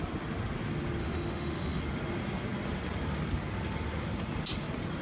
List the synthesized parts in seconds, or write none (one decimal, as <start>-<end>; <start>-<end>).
1.0-1.8